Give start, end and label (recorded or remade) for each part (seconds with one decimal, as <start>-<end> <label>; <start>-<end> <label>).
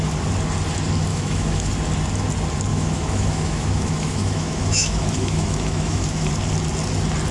0.0-1.1 recorded; 1.1-1.7 remade; 1.7-2.7 recorded; 2.7-6.3 remade; 6.3-7.3 recorded